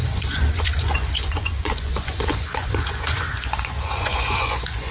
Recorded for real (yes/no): no